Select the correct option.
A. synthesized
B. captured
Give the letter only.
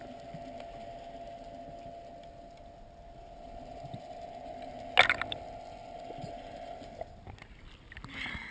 B